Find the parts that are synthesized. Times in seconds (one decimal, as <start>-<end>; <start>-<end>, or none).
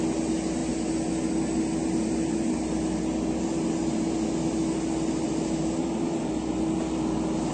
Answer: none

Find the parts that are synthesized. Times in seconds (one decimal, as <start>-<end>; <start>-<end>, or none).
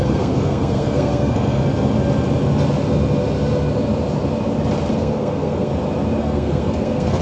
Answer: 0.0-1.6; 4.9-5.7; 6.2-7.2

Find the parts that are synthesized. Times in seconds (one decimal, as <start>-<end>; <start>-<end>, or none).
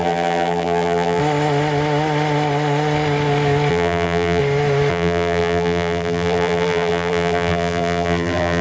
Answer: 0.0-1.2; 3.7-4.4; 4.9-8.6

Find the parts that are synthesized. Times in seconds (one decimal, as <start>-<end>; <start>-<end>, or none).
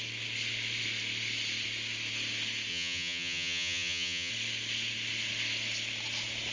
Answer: 2.7-4.3